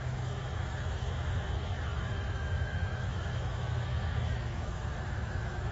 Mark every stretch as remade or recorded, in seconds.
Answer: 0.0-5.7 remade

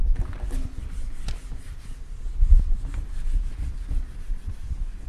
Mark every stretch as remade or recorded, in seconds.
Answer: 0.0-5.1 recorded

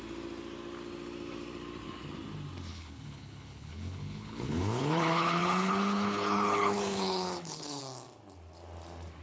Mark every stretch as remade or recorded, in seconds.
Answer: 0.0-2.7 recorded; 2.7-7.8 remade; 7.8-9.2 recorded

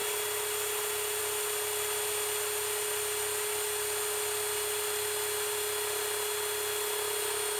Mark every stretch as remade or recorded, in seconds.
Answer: 0.0-7.6 recorded

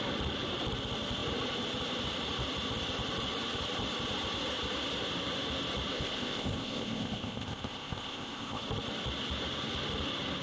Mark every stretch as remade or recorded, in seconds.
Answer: 0.0-5.9 recorded; 5.9-8.6 remade; 8.6-10.4 recorded

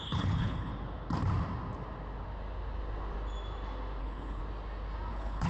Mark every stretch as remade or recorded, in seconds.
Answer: 0.0-0.7 remade; 0.7-4.0 recorded; 4.0-4.4 remade; 4.4-5.1 recorded; 5.1-5.5 remade

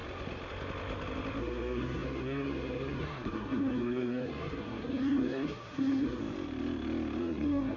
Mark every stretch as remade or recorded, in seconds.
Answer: 0.0-1.4 recorded; 1.4-6.2 remade; 6.2-7.2 recorded; 7.2-7.8 remade

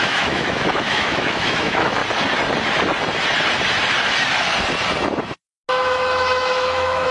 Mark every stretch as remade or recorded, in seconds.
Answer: 0.0-2.0 remade; 2.0-5.7 recorded; 5.7-7.1 remade